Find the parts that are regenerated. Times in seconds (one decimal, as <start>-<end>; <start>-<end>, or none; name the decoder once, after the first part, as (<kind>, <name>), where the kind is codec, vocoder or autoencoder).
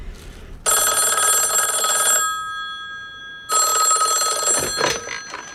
none